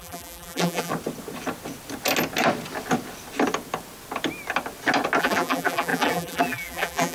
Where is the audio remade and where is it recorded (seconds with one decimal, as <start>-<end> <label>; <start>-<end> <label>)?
0.0-0.9 remade; 0.9-5.2 recorded; 5.2-7.1 remade